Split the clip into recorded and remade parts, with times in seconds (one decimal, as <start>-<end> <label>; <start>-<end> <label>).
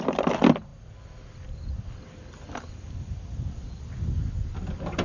0.0-5.0 recorded